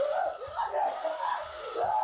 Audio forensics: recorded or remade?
recorded